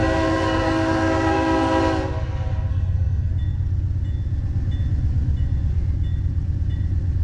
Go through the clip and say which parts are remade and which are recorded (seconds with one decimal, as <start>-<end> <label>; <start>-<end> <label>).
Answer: 0.0-1.8 remade; 1.8-2.7 recorded; 2.7-3.3 remade; 3.3-7.2 recorded

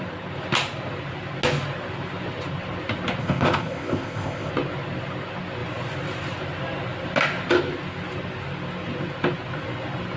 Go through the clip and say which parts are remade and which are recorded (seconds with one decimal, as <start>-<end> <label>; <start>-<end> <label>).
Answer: 0.0-3.2 recorded; 3.2-4.5 remade; 4.5-10.2 recorded

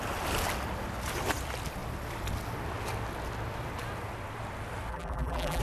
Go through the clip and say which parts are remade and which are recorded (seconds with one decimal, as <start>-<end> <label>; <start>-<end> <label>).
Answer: 0.0-4.9 recorded; 4.9-5.6 remade

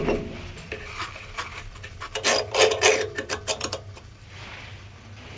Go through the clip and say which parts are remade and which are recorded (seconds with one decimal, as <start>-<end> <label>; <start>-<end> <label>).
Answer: 0.0-1.5 recorded; 1.5-4.7 remade; 4.7-5.4 recorded

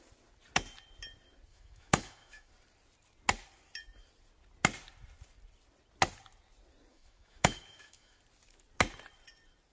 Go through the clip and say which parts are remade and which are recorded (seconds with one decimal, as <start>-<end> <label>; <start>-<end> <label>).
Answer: 0.0-1.5 recorded; 1.5-2.5 remade; 2.5-6.9 recorded; 6.9-8.2 remade; 8.2-9.7 recorded

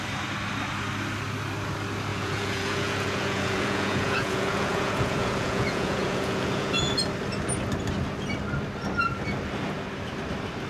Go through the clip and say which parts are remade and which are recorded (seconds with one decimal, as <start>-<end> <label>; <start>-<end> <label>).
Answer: 0.0-2.1 recorded; 2.1-6.9 remade; 6.9-10.7 recorded